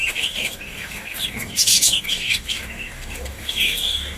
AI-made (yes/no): yes